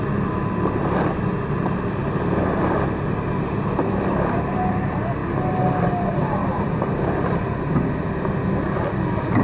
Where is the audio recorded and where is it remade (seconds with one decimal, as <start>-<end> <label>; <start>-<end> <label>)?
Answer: 0.0-2.0 recorded; 2.0-2.6 remade; 2.6-6.4 recorded; 6.4-7.6 remade; 7.6-9.4 recorded